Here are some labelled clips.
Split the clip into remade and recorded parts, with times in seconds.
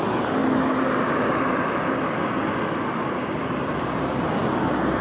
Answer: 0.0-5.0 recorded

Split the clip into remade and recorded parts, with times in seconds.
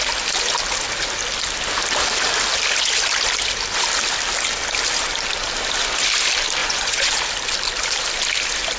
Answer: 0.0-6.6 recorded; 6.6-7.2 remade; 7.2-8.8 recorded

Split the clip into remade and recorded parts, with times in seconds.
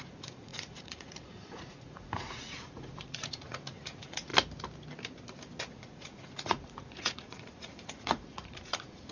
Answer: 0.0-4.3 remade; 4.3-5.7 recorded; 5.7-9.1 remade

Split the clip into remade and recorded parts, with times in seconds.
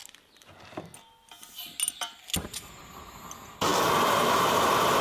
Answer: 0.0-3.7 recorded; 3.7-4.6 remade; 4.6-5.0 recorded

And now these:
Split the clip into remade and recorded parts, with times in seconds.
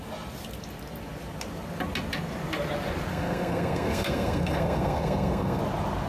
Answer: 0.0-3.1 recorded; 3.1-5.6 remade; 5.6-6.1 recorded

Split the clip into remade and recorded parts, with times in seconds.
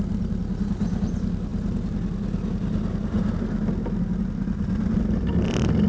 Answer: 0.0-5.9 recorded